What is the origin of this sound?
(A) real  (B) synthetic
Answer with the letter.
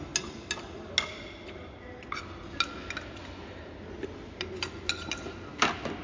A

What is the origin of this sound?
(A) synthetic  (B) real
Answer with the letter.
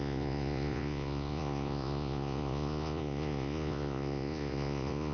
A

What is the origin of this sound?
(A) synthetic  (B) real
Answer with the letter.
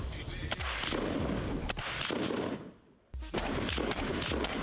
B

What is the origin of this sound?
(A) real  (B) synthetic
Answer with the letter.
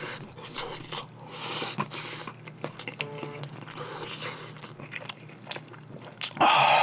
A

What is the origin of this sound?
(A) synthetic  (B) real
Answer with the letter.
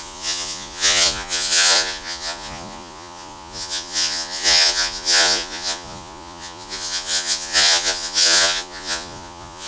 A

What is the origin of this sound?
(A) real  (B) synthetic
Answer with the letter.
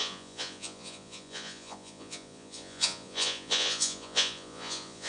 B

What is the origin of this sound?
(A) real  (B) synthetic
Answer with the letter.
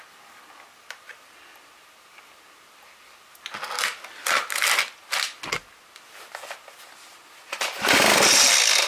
A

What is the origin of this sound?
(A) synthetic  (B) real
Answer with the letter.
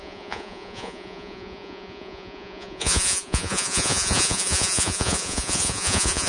A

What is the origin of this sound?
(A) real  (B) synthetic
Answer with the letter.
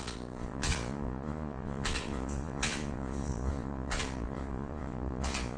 B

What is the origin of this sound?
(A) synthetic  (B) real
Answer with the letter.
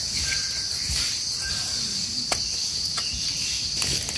B